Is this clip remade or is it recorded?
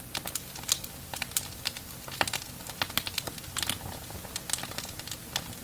recorded